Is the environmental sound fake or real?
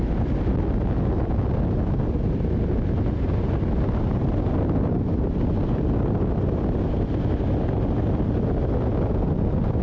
real